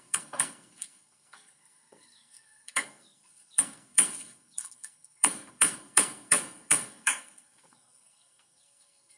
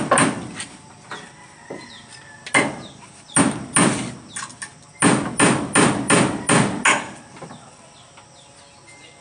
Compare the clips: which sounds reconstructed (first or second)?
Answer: first